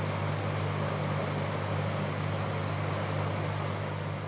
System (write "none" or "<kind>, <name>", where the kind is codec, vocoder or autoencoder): none